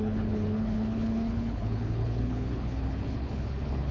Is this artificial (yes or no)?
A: yes